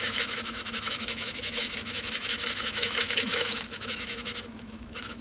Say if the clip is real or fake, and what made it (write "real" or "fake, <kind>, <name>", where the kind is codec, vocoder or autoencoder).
fake, autoencoder, DAC-VAE